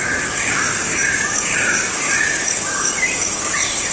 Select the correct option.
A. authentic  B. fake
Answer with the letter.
B